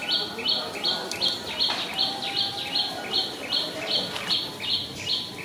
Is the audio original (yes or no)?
yes